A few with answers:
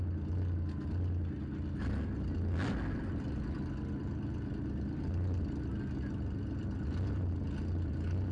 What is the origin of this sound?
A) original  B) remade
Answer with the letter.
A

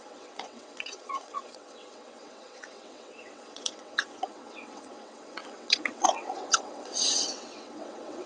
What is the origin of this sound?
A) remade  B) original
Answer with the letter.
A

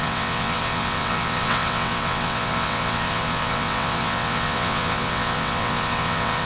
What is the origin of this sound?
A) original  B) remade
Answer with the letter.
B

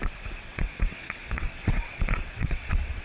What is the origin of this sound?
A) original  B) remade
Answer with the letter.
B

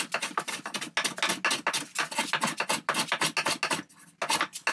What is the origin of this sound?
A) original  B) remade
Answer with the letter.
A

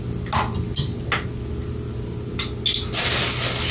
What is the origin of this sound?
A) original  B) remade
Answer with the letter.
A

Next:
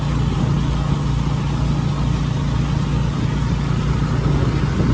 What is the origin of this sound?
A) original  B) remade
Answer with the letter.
A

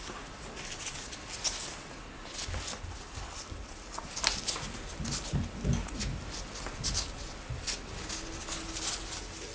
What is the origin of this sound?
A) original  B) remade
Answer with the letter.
A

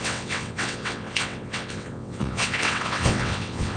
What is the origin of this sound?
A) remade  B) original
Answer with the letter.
A